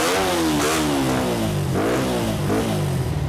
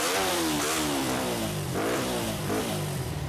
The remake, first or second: second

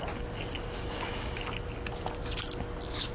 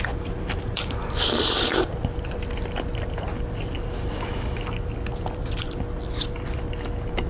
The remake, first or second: second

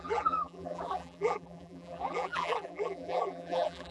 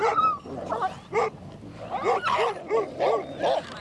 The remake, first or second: first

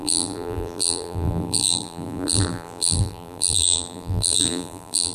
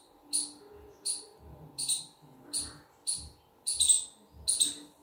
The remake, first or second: first